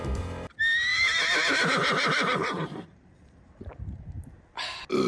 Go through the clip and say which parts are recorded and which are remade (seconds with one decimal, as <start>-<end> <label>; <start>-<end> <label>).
0.0-0.9 recorded; 0.9-4.0 remade; 4.0-5.1 recorded